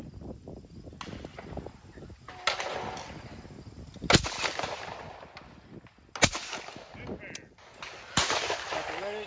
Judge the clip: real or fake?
real